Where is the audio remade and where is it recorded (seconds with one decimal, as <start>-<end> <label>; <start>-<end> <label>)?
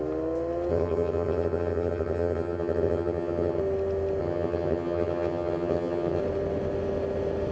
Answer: 0.0-0.7 recorded; 0.7-3.6 remade; 3.6-4.2 recorded; 4.2-6.2 remade; 6.2-7.5 recorded